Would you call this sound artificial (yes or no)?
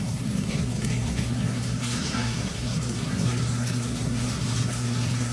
yes